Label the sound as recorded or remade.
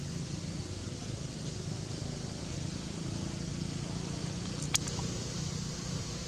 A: recorded